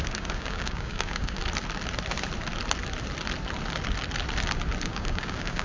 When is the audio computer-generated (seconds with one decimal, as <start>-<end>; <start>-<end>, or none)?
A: 0.0-1.4; 4.8-5.6